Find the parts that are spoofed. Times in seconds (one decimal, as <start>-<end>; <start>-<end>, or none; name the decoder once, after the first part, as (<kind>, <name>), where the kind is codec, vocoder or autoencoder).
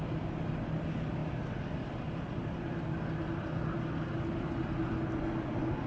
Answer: none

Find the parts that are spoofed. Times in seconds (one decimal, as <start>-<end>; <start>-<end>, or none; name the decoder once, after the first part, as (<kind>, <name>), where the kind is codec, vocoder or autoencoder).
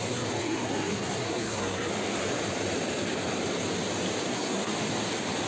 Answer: 0.0-1.9 (codec, SNAC); 4.3-4.7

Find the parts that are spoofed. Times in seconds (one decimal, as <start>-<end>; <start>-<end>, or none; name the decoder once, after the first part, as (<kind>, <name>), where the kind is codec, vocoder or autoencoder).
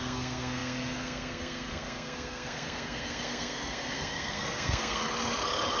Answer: 0.0-5.0 (codec, SNAC)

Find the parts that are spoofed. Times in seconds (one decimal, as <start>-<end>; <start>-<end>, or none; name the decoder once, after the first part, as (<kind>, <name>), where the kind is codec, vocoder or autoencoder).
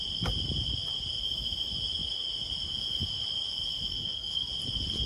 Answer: 3.9-4.5 (codec, SNAC)